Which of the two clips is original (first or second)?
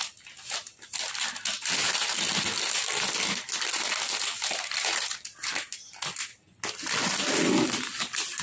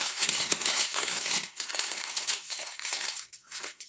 first